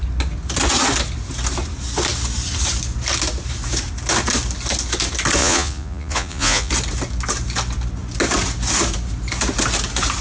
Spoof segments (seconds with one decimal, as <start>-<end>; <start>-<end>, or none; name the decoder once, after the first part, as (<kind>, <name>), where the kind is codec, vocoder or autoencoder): 5.4-6.7 (vocoder, Vocos)